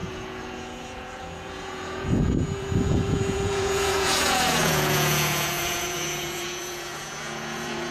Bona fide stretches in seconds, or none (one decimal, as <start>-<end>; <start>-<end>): none